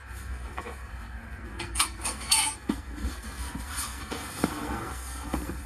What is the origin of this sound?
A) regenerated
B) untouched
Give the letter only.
A